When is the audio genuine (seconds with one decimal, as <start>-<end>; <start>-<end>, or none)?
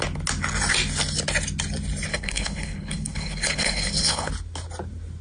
0.0-2.1; 4.3-5.2